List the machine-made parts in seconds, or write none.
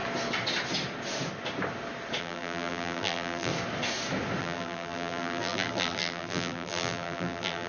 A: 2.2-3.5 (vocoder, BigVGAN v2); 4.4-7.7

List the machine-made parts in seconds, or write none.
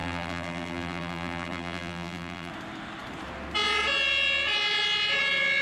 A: 0.0-2.5 (vocoder, BigVGAN v2)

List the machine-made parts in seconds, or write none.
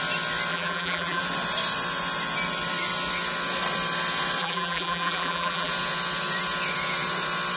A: 0.5-1.2 (vocoder, BigVGAN v2); 4.4-5.7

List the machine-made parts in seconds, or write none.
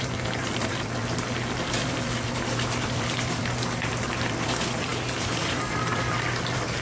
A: 0.0-6.8 (vocoder, BigVGAN v2)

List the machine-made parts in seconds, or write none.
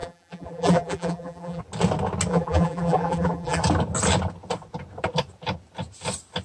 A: 0.0-1.6 (vocoder, BigVGAN v2); 2.3-3.6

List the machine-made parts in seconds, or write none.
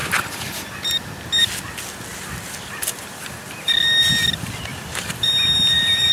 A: 0.0-0.5 (vocoder, BigVGAN v2); 2.1-4.1; 4.7-6.1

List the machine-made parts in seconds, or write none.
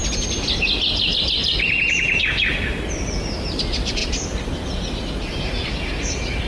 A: 3.4-4.0 (vocoder, BigVGAN v2); 6.0-6.5